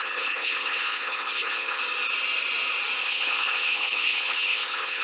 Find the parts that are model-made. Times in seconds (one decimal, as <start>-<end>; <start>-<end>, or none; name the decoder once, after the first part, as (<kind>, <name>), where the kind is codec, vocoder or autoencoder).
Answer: 0.0-1.8 (codec, HILCodec); 3.0-5.0